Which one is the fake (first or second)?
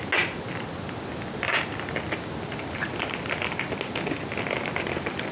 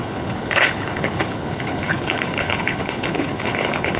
second